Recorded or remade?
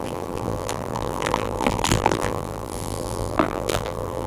remade